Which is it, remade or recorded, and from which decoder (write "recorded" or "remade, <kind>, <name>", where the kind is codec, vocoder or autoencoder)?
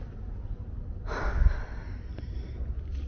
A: recorded